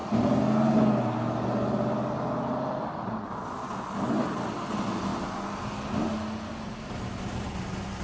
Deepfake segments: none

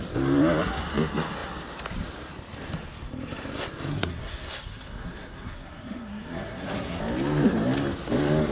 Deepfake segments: 3.9-7.0 (codec, SNAC)

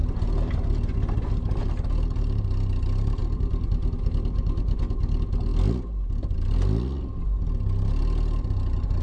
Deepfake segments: none

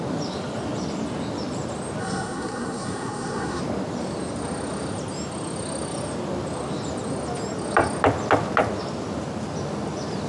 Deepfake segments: 2.0-3.6 (codec, SNAC)